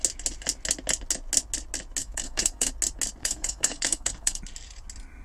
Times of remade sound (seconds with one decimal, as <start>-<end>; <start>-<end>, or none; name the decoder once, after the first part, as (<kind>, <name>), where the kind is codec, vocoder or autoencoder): 2.0-2.7 (codec, SNAC); 3.2-4.4